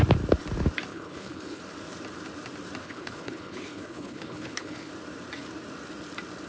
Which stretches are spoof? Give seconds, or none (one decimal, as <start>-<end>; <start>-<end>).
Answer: 0.9-1.6; 2.8-4.9